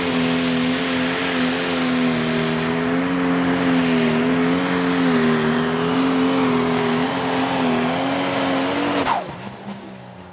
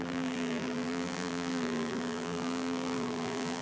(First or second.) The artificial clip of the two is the second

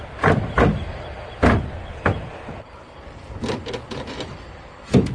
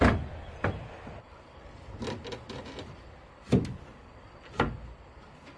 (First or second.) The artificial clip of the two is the first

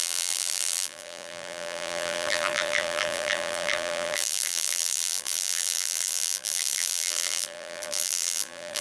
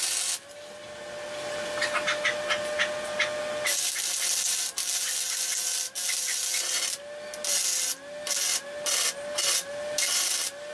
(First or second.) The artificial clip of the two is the first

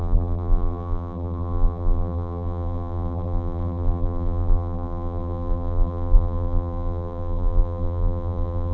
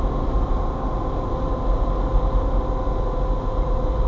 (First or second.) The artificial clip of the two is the first